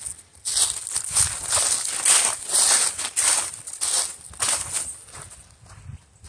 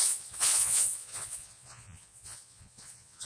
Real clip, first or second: first